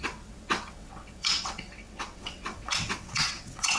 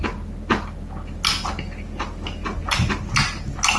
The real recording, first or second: second